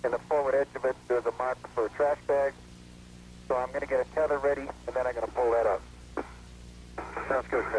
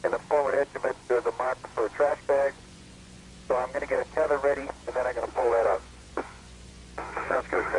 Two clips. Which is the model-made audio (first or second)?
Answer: second